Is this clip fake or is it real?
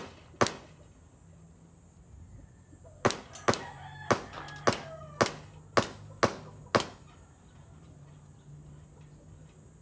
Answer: real